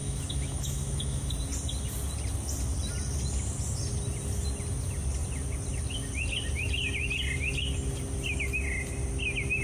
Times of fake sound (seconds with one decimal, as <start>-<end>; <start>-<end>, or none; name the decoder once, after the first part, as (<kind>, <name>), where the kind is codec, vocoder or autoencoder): 0.0-1.3 (autoencoder, DAC-VAE)